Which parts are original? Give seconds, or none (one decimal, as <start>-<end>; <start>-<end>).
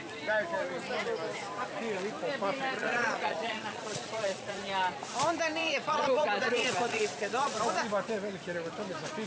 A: 0.0-2.8; 4.6-5.6; 7.6-9.3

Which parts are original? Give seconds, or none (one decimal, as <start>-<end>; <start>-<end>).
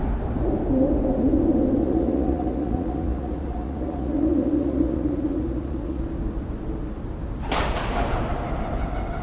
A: 0.0-1.8; 6.0-9.2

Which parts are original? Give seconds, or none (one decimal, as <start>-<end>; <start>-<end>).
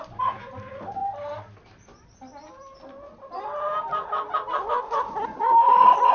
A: 0.0-6.1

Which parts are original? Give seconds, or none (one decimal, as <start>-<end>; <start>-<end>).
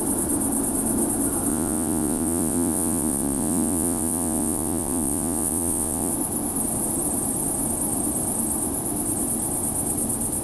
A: 0.0-1.5; 6.1-10.4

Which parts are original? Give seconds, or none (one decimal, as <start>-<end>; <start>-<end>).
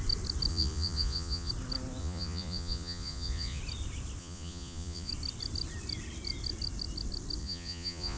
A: 0.0-0.5; 1.5-2.0; 3.6-4.2; 5.1-7.4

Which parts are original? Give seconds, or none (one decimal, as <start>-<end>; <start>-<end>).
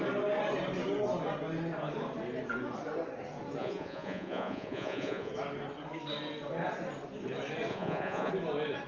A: 0.0-3.6; 5.3-7.7; 8.3-8.9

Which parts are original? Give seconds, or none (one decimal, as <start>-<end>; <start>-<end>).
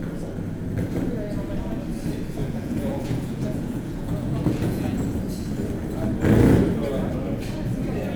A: 0.0-2.4; 5.0-8.2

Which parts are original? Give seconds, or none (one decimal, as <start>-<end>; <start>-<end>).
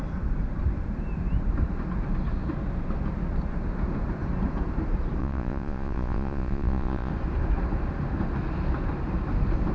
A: 0.0-5.2; 7.1-9.7